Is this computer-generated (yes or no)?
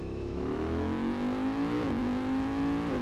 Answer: yes